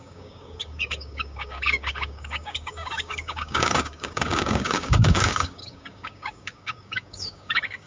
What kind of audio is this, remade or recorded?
remade